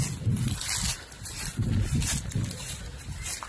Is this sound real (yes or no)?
yes